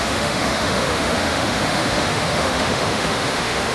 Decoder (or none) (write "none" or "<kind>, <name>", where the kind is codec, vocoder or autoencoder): autoencoder, DAC-VAE